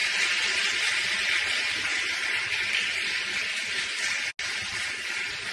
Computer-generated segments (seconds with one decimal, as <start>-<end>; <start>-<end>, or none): none